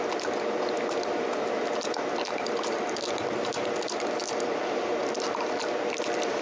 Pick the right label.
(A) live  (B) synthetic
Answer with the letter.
A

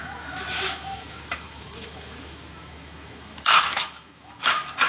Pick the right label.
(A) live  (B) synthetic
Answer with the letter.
B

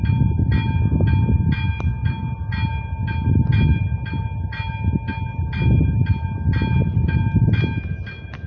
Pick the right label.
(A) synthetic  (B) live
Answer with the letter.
B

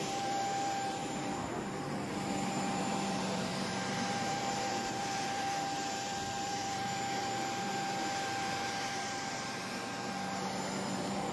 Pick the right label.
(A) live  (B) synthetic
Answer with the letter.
B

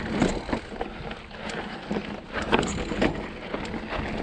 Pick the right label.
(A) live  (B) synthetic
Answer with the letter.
A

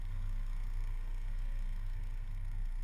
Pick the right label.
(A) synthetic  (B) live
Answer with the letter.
A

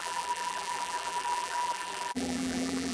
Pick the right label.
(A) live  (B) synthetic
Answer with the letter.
B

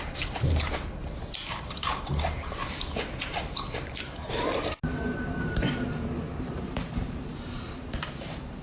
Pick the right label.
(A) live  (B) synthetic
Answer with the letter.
B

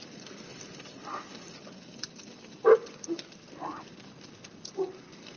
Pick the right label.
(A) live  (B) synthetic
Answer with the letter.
A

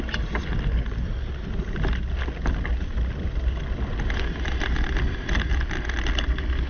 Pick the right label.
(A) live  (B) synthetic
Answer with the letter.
A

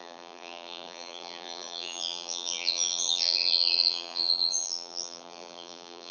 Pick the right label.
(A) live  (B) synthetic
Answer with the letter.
B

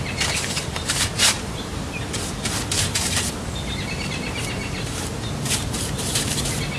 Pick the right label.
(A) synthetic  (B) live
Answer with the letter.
A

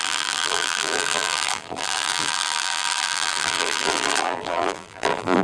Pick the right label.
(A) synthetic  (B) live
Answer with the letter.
A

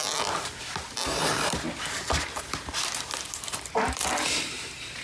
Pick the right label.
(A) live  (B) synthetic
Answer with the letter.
B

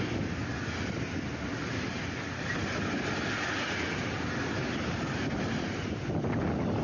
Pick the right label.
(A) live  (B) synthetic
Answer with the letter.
A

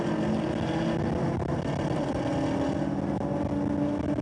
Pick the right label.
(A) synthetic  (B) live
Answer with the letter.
B